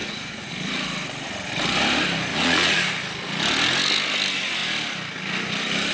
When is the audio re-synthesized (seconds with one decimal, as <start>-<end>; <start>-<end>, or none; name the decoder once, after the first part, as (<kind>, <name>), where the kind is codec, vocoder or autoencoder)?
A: 0.0-0.5 (vocoder, Vocos); 2.3-2.9